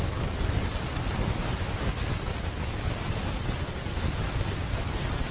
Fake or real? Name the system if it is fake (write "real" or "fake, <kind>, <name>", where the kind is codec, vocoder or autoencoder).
real